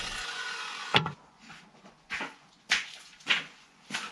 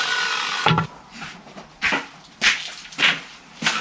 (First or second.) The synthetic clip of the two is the first